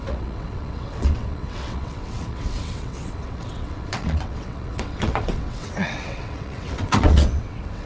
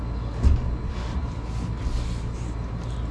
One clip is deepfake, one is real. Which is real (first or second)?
second